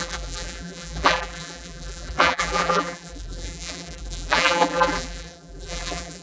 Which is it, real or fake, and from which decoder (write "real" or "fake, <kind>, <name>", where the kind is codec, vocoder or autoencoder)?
fake, vocoder, BigVGAN v2